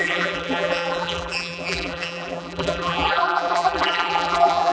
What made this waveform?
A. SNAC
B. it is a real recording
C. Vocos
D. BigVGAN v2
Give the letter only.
D